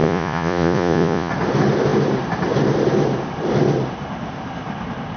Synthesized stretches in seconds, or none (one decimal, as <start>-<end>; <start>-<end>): 0.0-1.3